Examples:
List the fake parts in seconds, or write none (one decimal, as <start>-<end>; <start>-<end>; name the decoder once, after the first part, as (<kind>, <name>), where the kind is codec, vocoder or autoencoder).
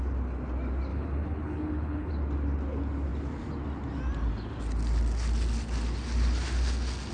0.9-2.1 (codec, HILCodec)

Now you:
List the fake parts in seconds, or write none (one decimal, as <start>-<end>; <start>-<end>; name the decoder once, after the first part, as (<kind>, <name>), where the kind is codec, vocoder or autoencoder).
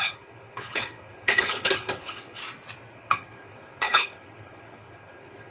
0.0-2.4 (codec, HILCodec); 2.9-5.5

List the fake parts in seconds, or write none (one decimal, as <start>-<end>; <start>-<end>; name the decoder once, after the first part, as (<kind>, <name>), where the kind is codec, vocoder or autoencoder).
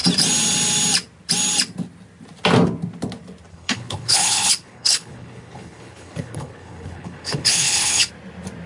3.5-8.1 (codec, HILCodec)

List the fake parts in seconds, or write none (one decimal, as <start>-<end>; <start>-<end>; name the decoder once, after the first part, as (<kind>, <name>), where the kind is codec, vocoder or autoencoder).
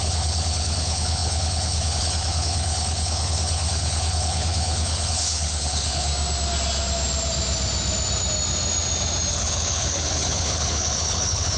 0.0-6.1 (codec, HILCodec); 9.3-11.6